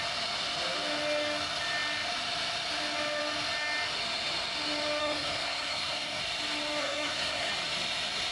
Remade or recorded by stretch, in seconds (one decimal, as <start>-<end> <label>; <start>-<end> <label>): 0.0-5.0 recorded; 5.0-6.2 remade; 6.2-6.8 recorded; 6.8-7.5 remade; 7.5-8.3 recorded